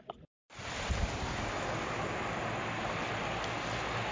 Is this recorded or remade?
recorded